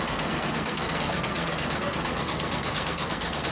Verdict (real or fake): fake